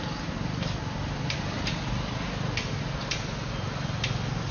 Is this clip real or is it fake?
real